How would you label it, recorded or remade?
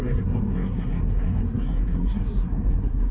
remade